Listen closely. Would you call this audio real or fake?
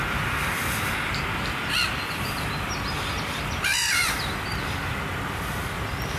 real